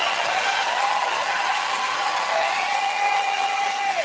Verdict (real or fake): fake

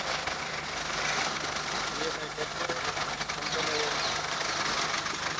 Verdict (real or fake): real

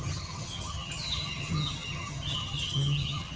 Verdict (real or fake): fake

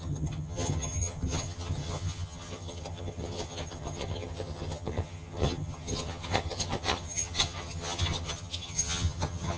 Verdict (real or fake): fake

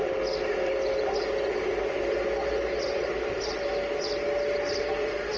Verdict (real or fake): real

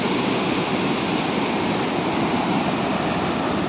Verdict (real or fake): real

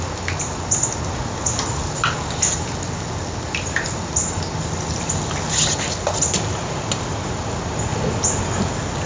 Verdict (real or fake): real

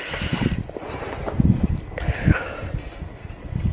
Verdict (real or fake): real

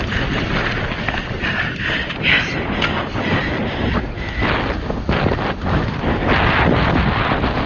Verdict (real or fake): real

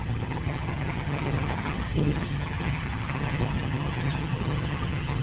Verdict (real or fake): fake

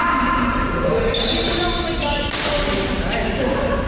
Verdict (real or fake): real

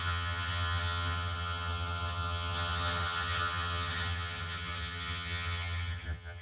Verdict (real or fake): fake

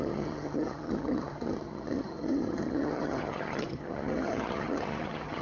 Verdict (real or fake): fake